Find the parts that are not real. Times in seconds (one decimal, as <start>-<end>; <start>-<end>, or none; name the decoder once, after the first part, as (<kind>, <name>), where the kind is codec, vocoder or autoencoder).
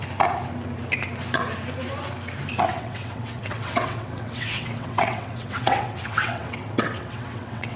2.7-7.8 (vocoder, WaveNeXt)